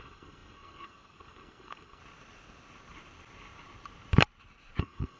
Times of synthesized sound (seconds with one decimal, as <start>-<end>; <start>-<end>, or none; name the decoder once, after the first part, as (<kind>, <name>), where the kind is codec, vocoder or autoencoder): 0.0-2.0 (codec, SNAC); 4.8-5.2